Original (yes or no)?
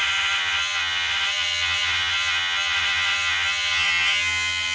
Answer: no